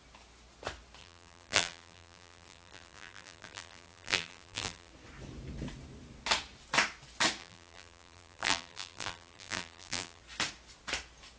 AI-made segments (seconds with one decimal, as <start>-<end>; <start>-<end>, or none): 1.0-4.9; 7.4-10.2